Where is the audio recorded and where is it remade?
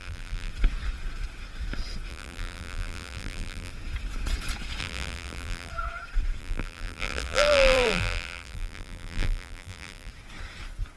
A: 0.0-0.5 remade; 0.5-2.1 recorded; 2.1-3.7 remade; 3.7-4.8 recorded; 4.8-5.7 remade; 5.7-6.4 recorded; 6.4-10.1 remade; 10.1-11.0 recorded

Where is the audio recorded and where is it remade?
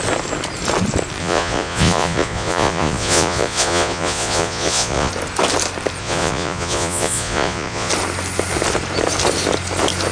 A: 0.0-1.2 recorded; 1.2-5.1 remade; 5.1-6.0 recorded; 6.0-7.9 remade; 7.9-10.1 recorded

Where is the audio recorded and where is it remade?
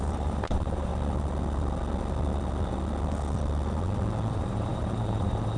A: 0.0-0.9 remade; 0.9-4.3 recorded; 4.3-5.6 remade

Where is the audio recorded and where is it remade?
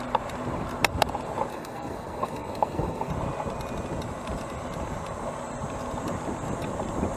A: 0.0-1.5 recorded; 1.5-3.1 remade; 3.1-7.2 recorded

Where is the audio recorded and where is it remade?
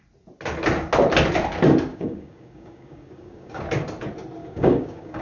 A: 0.0-1.9 recorded; 1.9-3.6 remade; 3.6-4.4 recorded; 4.4-5.2 remade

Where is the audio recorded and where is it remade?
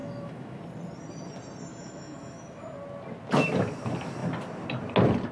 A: 0.0-0.6 remade; 0.6-1.7 recorded; 1.7-2.6 remade; 2.6-5.3 recorded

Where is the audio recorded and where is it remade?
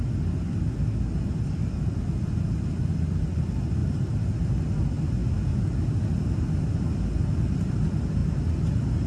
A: 0.0-3.8 recorded; 3.8-4.7 remade; 4.7-9.1 recorded